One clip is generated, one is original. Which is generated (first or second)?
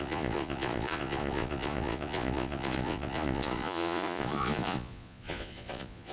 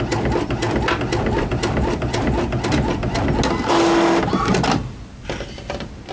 first